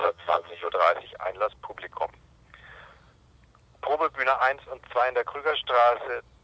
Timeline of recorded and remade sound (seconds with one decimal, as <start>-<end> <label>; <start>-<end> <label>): 0.0-0.7 remade; 0.7-6.4 recorded